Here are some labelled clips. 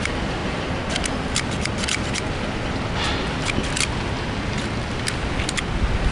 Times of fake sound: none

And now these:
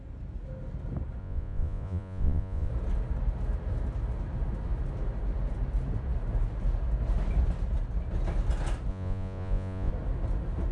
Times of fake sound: 1.2-2.7 (vocoder, Vocos); 8.9-9.9

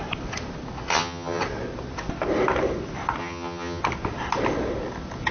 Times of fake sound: 0.9-1.4 (vocoder, HiFi-GAN); 3.2-3.8

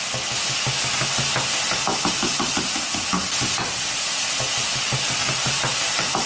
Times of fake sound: 1.9-3.2 (vocoder, BigVGAN v2); 5.2-6.3

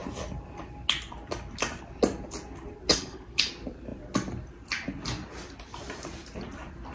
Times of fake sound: 2.9-3.5 (codec, HILCodec)